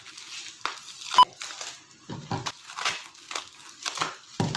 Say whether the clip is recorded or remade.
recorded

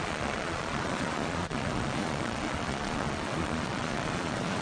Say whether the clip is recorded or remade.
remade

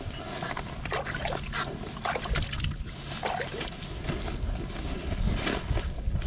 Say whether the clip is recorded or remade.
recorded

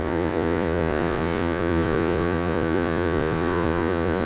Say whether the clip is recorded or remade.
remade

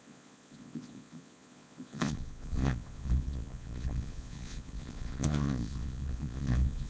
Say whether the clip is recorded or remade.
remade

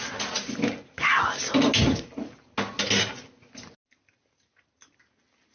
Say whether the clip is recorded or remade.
recorded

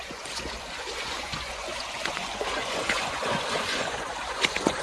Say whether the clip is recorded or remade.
remade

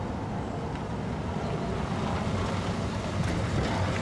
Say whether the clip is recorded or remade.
recorded